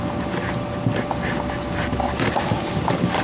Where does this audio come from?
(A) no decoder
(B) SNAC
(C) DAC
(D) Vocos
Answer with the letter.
A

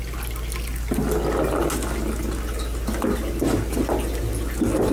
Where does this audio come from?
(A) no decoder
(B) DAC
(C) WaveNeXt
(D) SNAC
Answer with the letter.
A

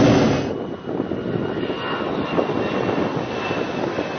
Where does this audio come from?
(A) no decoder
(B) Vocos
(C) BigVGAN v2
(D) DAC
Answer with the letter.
A